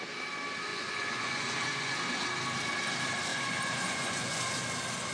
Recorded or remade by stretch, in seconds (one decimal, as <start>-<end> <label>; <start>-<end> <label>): 0.0-0.7 recorded; 0.7-1.9 remade; 1.9-3.3 recorded; 3.3-4.4 remade; 4.4-5.1 recorded